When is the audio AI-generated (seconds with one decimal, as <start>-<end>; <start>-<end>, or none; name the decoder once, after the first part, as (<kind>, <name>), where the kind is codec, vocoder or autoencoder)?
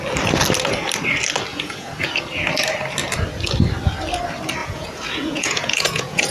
1.5-2.1 (vocoder, Vocos); 4.6-6.3